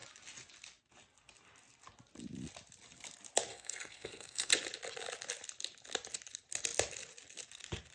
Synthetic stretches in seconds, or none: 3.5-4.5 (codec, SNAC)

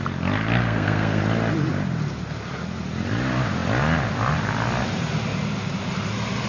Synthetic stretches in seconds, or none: 0.6-1.2 (codec, SNAC)